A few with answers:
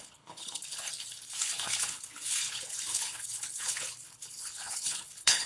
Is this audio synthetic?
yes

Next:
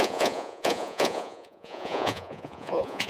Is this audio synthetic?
yes